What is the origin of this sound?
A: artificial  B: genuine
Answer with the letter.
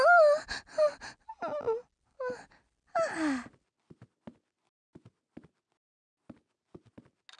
B